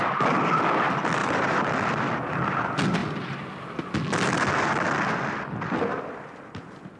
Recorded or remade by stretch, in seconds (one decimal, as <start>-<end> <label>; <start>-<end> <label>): 0.0-1.2 recorded; 1.2-1.7 remade; 1.7-7.0 recorded